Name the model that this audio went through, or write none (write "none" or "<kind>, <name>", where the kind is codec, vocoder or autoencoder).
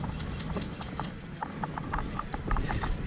none